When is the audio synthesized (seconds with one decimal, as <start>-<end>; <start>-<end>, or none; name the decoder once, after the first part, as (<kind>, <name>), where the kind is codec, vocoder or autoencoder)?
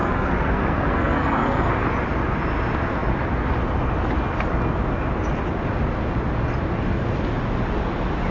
0.0-1.7 (codec, SNAC)